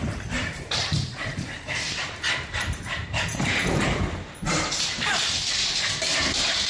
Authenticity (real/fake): fake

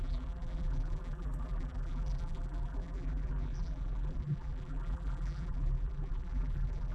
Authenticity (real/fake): fake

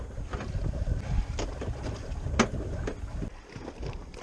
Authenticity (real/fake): real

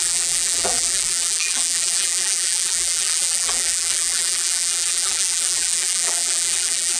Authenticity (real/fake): fake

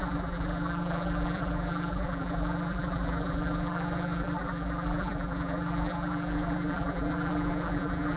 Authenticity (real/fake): fake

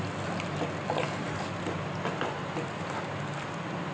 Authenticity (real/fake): real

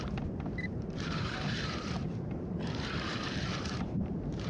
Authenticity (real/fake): fake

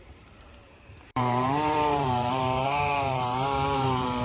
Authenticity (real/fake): fake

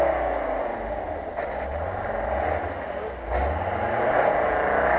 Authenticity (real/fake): real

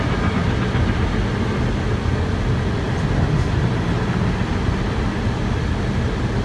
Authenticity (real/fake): real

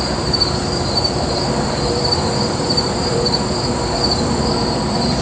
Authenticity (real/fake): fake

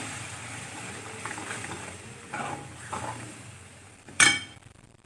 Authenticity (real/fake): fake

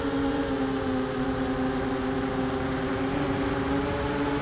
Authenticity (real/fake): real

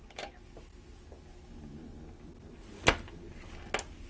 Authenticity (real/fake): real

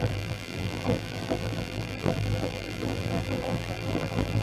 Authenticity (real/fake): fake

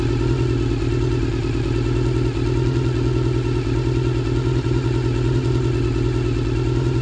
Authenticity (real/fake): real